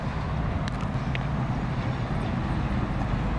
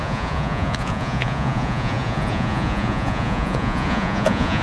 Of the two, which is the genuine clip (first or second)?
first